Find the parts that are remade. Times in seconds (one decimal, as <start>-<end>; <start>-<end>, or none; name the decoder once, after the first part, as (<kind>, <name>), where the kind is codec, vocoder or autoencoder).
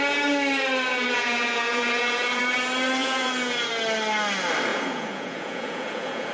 0.9-2.4 (vocoder, Vocos); 3.0-3.7; 4.7-6.3